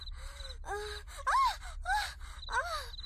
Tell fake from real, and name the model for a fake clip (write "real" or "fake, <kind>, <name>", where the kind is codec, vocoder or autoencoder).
real